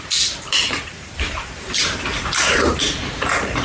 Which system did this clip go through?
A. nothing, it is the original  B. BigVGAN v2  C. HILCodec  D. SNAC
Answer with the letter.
B